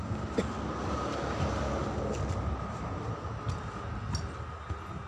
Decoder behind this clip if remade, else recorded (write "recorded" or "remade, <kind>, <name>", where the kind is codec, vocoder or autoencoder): recorded